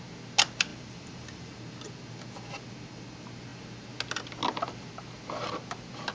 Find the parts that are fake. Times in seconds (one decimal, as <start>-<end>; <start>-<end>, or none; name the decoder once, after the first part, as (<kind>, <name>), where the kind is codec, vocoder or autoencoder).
0.7-1.5 (vocoder, BigVGAN v2)